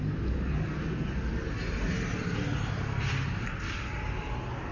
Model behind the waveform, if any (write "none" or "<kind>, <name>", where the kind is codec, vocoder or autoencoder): none